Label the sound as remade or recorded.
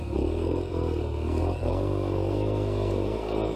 remade